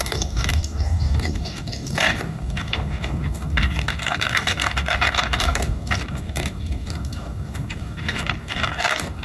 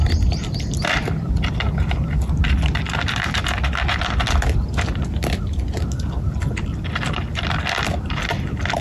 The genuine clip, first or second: second